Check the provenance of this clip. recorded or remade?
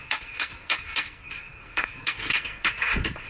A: remade